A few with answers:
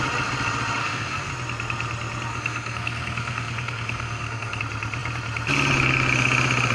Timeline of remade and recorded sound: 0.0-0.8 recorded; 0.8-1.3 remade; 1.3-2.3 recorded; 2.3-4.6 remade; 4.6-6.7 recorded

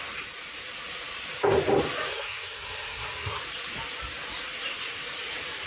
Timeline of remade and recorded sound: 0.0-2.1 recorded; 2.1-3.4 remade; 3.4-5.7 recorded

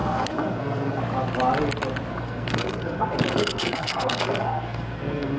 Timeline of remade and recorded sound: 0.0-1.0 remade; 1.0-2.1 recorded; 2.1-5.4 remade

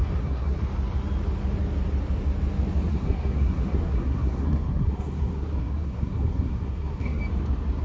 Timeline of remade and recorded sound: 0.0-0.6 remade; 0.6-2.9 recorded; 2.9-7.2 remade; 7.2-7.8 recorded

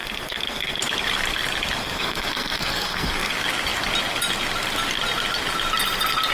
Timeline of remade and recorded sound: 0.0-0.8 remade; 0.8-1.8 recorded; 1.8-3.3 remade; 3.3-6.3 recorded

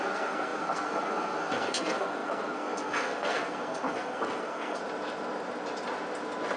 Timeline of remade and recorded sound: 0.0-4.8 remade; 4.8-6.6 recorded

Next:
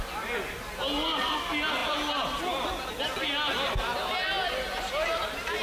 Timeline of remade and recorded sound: 0.0-5.6 recorded

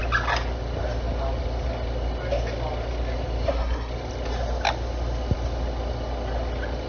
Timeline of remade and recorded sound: 0.0-3.5 recorded; 3.5-3.9 remade; 3.9-6.9 recorded